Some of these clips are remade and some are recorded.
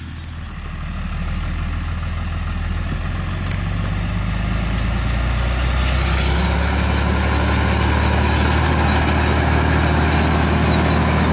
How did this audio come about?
recorded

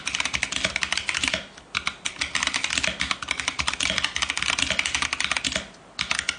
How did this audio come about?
recorded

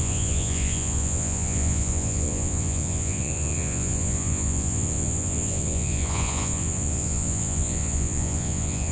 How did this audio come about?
remade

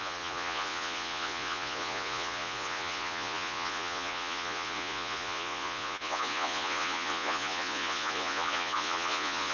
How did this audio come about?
remade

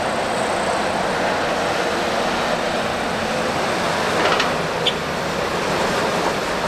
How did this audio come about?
recorded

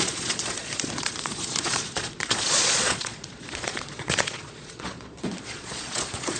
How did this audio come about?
remade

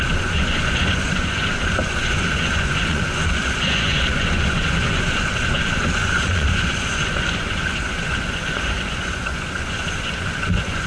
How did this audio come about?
remade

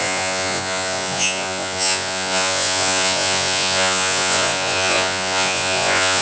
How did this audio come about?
remade